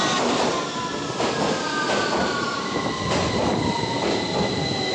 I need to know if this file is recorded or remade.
recorded